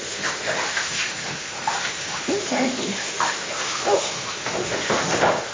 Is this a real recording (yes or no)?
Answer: no